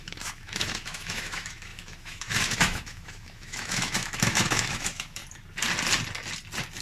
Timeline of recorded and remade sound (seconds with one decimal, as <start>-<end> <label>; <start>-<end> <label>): 0.0-5.2 remade; 5.2-6.8 recorded